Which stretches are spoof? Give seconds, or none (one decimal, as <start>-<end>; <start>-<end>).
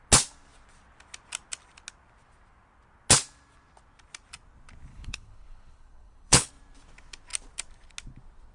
4.9-6.5